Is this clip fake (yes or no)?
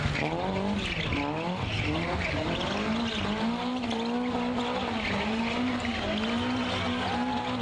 no